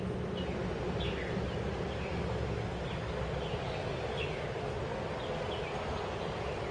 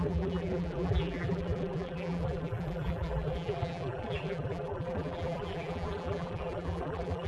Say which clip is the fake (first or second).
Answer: second